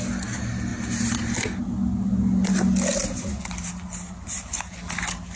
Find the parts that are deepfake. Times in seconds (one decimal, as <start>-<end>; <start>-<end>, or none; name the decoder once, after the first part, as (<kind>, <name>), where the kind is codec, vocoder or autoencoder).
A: none